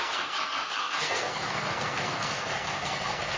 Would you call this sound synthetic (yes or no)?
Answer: yes